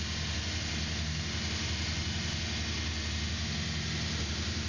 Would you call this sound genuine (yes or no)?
yes